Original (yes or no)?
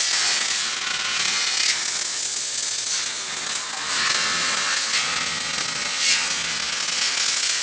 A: yes